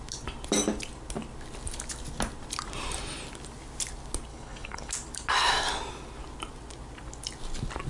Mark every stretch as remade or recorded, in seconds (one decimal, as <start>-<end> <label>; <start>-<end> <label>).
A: 0.0-4.3 recorded; 4.3-4.9 remade; 4.9-7.9 recorded